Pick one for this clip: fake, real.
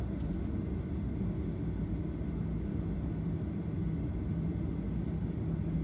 real